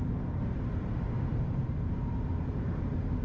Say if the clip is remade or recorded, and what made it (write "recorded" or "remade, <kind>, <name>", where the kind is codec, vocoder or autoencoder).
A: recorded